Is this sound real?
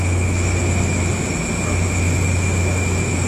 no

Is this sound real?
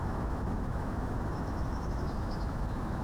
no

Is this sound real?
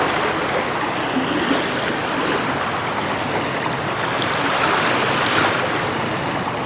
yes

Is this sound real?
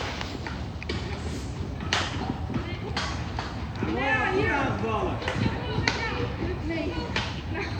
yes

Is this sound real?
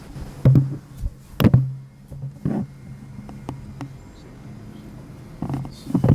yes